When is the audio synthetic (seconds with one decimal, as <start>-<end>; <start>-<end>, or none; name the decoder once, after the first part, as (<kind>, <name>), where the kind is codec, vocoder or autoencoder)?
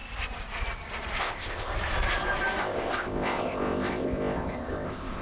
1.2-1.7 (codec, ZipCodec); 2.6-5.2